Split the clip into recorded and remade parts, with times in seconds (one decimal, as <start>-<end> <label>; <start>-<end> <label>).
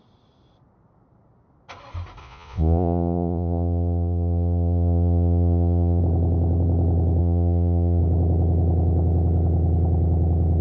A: 0.0-2.2 recorded; 2.2-6.0 remade; 6.0-7.2 recorded; 7.2-8.0 remade; 8.0-10.6 recorded